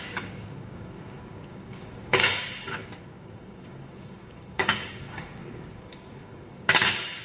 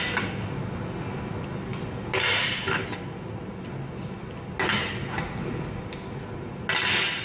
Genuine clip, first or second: second